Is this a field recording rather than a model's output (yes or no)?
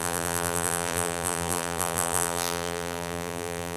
no